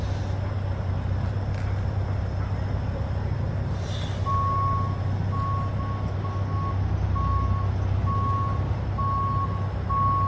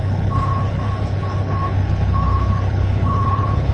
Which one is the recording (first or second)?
first